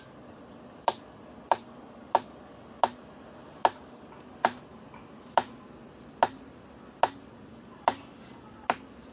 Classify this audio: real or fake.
real